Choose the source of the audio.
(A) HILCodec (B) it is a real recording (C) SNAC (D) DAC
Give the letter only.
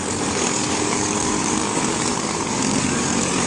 D